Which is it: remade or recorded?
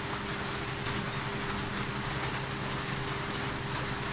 recorded